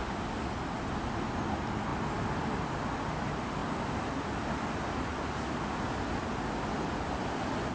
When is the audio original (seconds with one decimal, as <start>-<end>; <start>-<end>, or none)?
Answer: 0.0-1.9; 2.8-3.6; 6.3-7.7